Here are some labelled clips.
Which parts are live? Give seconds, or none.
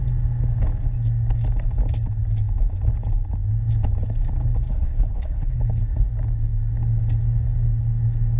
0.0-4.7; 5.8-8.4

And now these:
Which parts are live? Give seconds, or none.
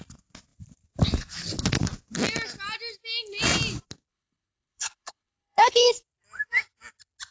0.0-4.1; 6.0-7.3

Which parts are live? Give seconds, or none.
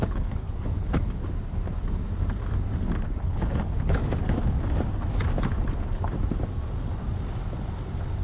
1.2-3.2; 4.0-8.2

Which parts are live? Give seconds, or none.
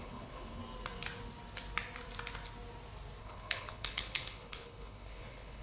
0.6-3.2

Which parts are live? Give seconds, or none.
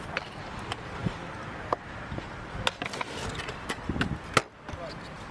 0.0-5.3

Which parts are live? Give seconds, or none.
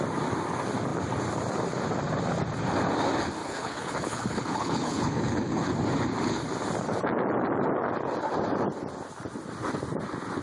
0.0-3.4; 5.7-10.4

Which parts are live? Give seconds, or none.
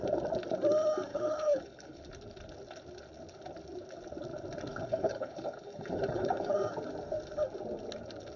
0.0-1.1; 2.0-4.7; 6.5-8.4